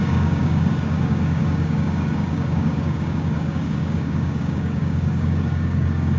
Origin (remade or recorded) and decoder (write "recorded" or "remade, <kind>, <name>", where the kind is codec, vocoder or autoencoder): remade, codec, DAC